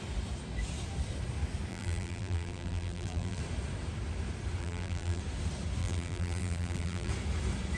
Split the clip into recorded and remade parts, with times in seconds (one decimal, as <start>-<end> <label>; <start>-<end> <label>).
0.0-1.7 recorded; 1.7-3.4 remade; 3.4-4.6 recorded; 4.6-5.2 remade; 5.2-5.8 recorded; 5.8-7.1 remade; 7.1-7.8 recorded